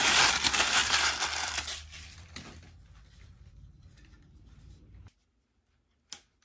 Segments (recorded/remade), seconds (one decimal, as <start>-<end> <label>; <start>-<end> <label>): 0.0-0.8 recorded; 0.8-4.6 remade; 4.6-6.4 recorded